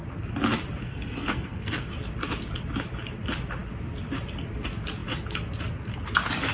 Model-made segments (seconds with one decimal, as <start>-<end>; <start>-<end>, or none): 0.8-1.9